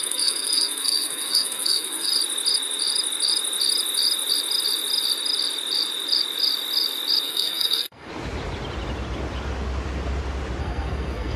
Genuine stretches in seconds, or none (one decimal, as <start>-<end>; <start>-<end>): 2.1-7.2; 8.1-10.6